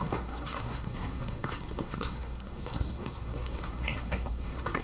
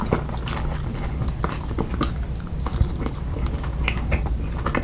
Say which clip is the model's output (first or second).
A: first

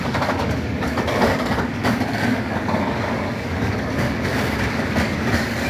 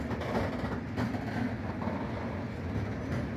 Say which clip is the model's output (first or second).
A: first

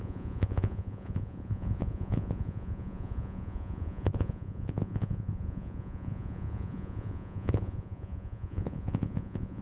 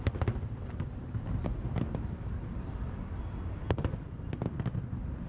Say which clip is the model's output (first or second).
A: first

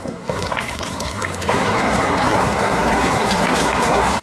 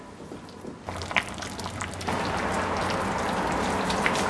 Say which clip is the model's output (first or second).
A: first